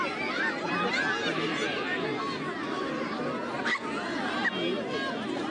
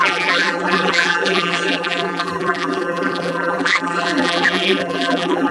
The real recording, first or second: first